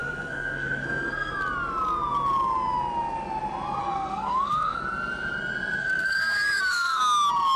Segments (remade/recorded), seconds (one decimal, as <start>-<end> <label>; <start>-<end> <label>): 0.0-1.3 remade; 1.3-3.8 recorded; 3.8-4.8 remade; 4.8-5.8 recorded; 5.8-7.0 remade; 7.0-7.6 recorded